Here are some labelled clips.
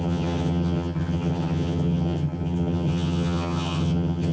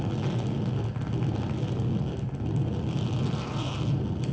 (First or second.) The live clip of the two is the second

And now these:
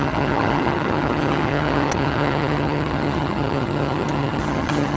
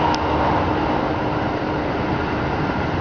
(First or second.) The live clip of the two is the second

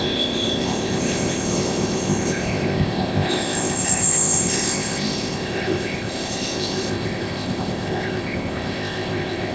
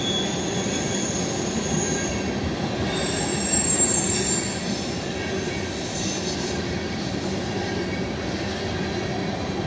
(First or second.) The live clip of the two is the second